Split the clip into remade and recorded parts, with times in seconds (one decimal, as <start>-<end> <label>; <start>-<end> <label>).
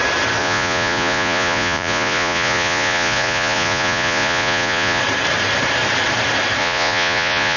0.0-0.4 recorded; 0.4-5.0 remade; 5.0-6.6 recorded; 6.6-7.6 remade